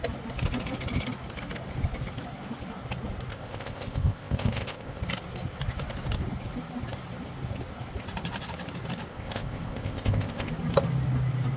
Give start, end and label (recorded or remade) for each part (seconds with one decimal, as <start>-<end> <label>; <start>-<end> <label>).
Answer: 0.0-3.3 recorded; 3.3-5.0 remade; 5.0-9.1 recorded; 9.1-10.5 remade; 10.5-11.6 recorded